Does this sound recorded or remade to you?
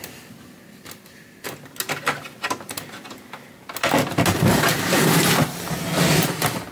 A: recorded